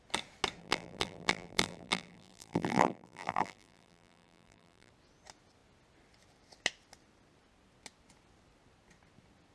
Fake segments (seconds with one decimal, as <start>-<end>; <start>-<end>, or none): 0.6-4.9